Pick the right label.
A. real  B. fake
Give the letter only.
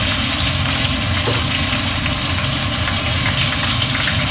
A